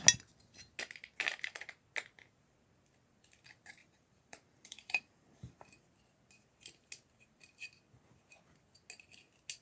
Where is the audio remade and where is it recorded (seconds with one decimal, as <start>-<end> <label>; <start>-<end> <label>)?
0.0-3.8 recorded; 3.8-5.7 remade; 5.7-9.6 recorded